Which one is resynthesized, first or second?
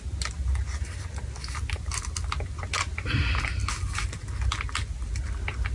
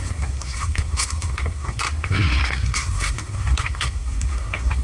second